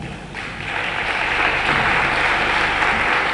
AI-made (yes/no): no